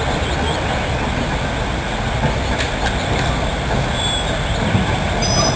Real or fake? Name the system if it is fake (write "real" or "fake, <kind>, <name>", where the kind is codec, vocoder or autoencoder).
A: real